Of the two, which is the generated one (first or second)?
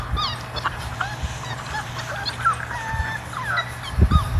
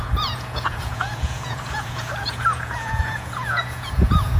second